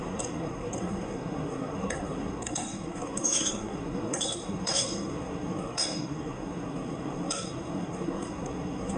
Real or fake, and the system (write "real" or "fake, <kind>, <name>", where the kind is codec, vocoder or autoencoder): fake, codec, SNAC